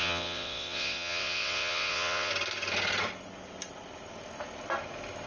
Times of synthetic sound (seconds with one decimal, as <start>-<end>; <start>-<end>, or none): 0.0-2.3